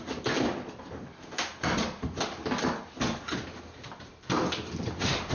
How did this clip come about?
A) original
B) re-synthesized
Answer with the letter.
A